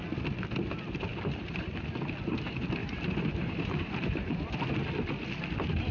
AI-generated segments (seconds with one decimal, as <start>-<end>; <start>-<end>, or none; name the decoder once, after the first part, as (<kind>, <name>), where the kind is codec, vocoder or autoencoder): 1.1-1.8 (vocoder, BigVGAN v2); 2.8-4.7